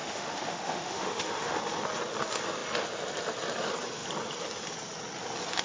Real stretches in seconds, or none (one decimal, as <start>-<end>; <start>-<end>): 1.6-5.6